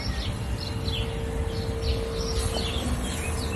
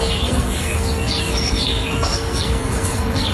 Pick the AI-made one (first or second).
second